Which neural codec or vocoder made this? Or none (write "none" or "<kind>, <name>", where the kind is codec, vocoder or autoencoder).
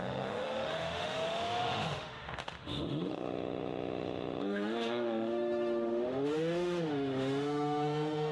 autoencoder, DAC-VAE